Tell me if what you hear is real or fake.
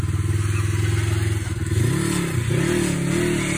real